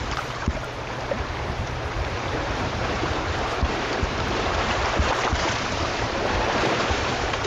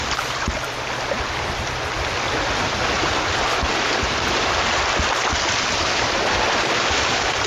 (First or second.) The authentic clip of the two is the second